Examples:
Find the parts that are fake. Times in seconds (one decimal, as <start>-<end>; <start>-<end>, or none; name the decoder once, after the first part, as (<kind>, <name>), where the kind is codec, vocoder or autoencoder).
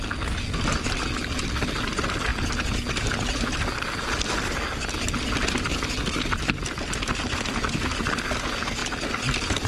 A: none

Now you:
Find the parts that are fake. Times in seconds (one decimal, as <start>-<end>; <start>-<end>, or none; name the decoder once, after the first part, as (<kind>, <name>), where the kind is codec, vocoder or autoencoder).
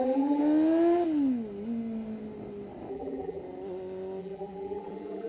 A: 0.0-0.4 (vocoder, BigVGAN v2); 2.9-3.4; 4.2-5.3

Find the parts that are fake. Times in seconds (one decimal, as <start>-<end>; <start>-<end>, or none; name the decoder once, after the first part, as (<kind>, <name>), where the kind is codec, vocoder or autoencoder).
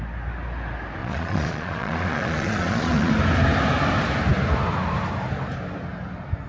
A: 1.0-3.1 (vocoder, Vocos)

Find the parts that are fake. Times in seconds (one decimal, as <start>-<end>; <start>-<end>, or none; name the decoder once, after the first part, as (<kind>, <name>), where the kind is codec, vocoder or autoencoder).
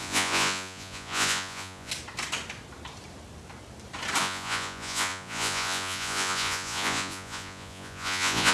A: 0.0-1.9 (vocoder, Vocos); 4.2-8.5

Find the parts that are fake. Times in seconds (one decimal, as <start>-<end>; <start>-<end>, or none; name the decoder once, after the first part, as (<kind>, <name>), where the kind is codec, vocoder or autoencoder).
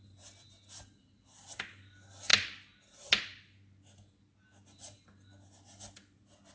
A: none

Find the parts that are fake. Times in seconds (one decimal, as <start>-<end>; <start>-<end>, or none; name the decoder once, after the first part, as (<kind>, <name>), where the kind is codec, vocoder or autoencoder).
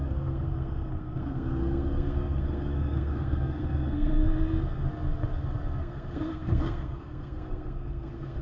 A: 0.0-4.2 (codec, SNAC); 5.8-8.4